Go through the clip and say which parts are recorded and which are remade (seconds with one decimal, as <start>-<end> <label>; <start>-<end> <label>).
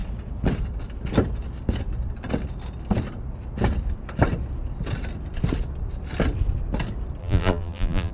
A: 0.0-7.2 recorded; 7.2-8.1 remade